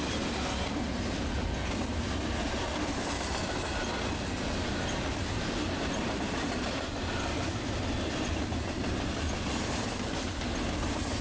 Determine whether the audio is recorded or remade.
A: recorded